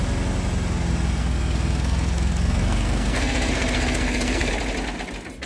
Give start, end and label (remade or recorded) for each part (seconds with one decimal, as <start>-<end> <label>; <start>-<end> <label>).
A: 0.0-1.2 recorded; 1.2-4.5 remade; 4.5-5.5 recorded